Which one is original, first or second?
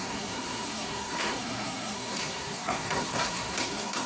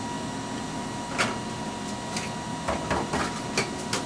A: second